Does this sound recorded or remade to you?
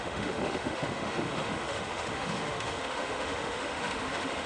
remade